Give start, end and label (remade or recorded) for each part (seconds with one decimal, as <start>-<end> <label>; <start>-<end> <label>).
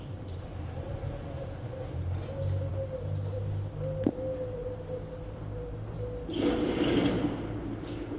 0.0-8.2 recorded